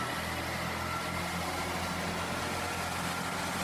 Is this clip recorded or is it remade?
recorded